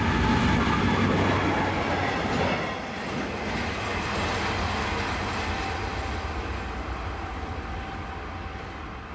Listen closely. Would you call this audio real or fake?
real